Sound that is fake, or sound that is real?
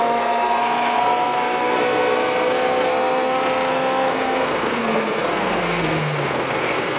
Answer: fake